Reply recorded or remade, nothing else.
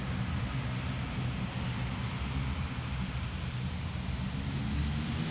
recorded